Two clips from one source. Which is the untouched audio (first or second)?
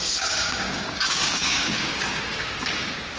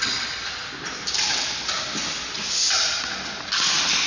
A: second